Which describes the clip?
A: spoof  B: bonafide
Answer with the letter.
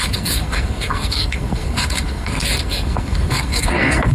A